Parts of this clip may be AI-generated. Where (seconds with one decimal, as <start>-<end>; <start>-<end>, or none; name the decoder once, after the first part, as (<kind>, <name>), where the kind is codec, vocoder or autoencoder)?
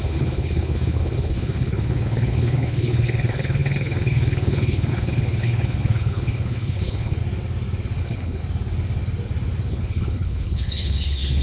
0.0-7.2 (codec, HILCodec); 8.0-8.4; 9.7-11.4